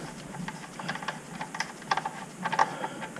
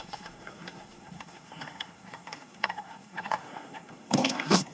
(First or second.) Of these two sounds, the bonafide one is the first